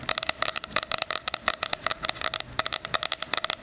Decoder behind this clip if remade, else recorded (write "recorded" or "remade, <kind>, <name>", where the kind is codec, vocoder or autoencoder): remade, vocoder, BigVGAN v2